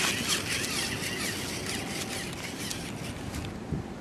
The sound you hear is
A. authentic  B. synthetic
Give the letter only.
A